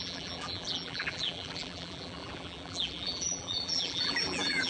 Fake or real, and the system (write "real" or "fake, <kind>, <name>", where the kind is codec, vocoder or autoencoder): fake, vocoder, BigVGAN v2